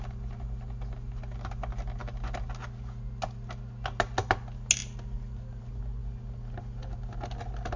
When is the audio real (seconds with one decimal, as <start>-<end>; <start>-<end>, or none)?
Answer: 0.0-7.8